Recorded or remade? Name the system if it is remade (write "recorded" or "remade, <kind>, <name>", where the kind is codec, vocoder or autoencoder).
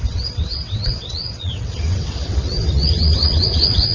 remade, vocoder, WaveNeXt